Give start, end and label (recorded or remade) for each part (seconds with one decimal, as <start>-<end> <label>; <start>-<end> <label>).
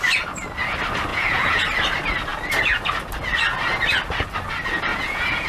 0.0-1.1 recorded; 1.1-1.6 remade; 1.6-4.9 recorded; 4.9-5.5 remade